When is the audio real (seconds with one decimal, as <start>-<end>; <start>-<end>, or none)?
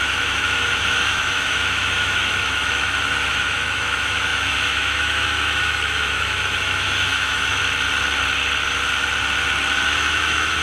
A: 7.6-9.8